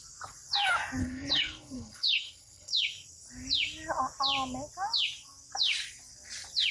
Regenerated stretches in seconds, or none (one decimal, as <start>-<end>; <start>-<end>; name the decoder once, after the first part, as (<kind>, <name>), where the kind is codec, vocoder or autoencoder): 1.0-2.7 (codec, HILCodec)